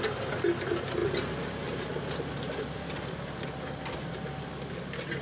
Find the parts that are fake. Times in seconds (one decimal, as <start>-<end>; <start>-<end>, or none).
none